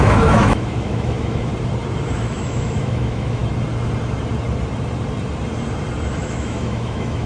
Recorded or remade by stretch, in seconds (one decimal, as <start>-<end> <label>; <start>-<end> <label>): 0.0-1.5 remade; 1.5-2.1 recorded; 2.1-3.4 remade; 3.4-6.1 recorded; 6.1-7.3 remade